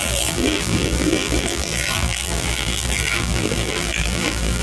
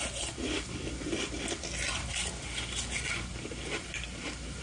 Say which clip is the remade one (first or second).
first